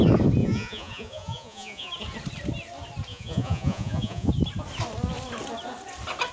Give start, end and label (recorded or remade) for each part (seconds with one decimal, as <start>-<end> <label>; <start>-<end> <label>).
0.0-0.4 recorded; 0.4-1.9 remade; 1.9-3.1 recorded; 3.1-4.3 remade; 4.3-6.3 recorded